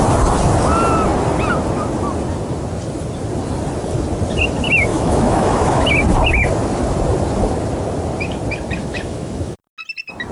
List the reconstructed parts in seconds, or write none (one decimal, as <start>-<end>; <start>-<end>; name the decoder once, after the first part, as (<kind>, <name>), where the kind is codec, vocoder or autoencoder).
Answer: 4.9-5.9 (autoencoder, DAC-VAE); 8.8-9.7